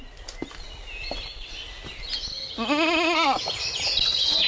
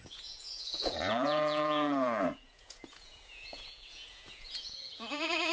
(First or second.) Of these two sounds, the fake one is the second